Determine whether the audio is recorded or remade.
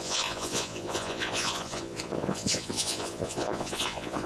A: remade